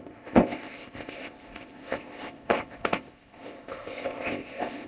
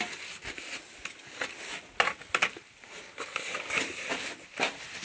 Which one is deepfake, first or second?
first